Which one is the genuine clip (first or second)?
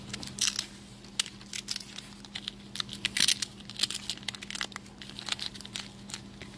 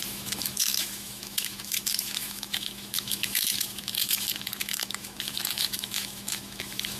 first